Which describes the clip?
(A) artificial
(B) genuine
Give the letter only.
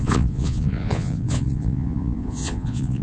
A